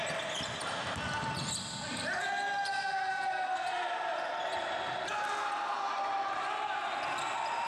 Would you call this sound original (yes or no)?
yes